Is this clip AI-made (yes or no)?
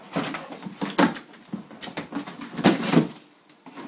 no